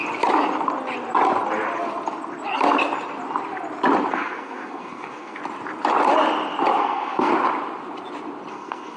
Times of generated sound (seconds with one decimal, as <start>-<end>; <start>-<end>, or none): 4.1-5.4; 6.8-7.3; 8.5-9.0